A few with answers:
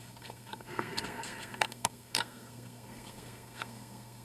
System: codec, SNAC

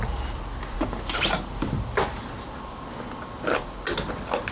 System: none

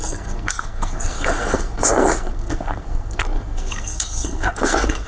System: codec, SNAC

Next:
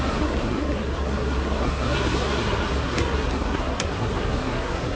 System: codec, SNAC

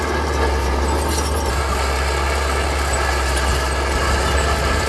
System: none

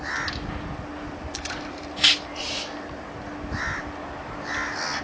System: none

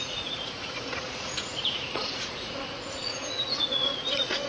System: vocoder, Vocos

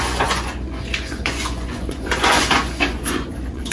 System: vocoder, Vocos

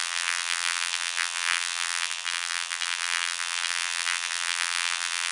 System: vocoder, BigVGAN v2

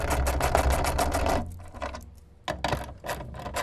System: none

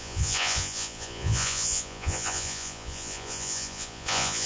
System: vocoder, Vocos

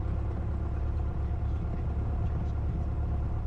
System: none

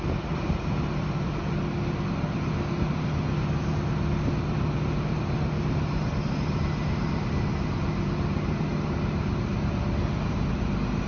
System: none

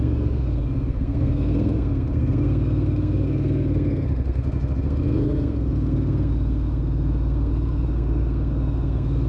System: codec, SNAC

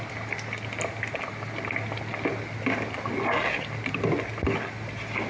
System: none